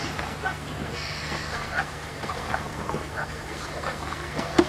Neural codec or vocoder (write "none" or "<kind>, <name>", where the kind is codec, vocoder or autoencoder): codec, SNAC